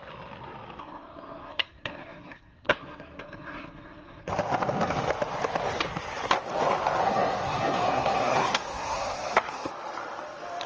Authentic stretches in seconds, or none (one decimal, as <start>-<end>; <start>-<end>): 0.0-0.8; 4.3-7.0; 9.7-10.7